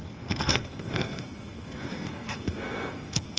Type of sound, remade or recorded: remade